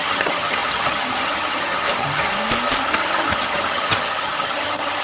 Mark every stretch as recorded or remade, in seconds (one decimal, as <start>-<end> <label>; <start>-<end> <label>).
0.0-2.3 remade; 2.3-2.8 recorded; 2.8-5.0 remade